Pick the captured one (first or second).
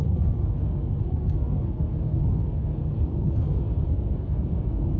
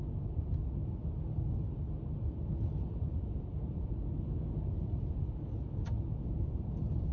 second